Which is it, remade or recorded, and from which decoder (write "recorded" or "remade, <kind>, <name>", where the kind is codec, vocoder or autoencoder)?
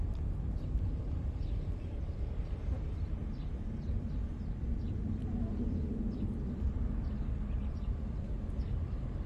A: remade, vocoder, BigVGAN v2